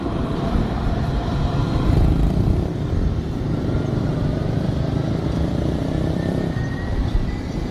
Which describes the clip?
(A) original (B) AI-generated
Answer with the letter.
B